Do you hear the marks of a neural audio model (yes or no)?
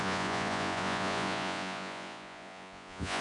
yes